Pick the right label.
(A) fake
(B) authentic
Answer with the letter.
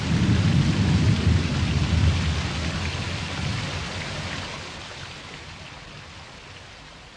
B